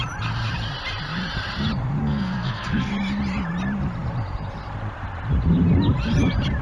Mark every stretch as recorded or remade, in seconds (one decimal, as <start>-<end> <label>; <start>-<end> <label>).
0.0-2.0 recorded; 2.0-2.9 remade; 2.9-6.6 recorded